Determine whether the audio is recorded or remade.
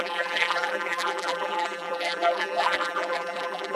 remade